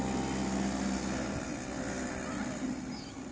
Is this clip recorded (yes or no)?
yes